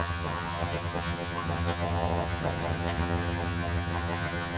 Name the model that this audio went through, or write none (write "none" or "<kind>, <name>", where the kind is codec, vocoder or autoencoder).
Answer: vocoder, HiFi-GAN